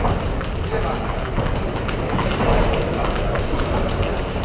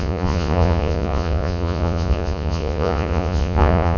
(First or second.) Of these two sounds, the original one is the first